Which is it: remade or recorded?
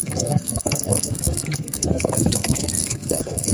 remade